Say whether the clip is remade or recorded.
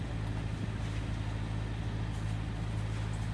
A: recorded